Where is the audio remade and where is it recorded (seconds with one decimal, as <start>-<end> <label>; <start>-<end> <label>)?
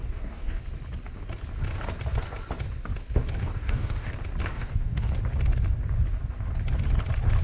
0.0-0.6 remade; 0.6-3.4 recorded; 3.4-4.1 remade; 4.1-4.5 recorded; 4.5-5.1 remade; 5.1-7.4 recorded